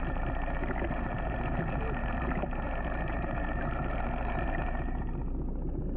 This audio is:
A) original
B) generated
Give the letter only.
A